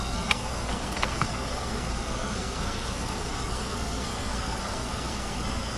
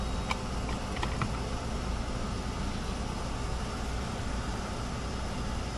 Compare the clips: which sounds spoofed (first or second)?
first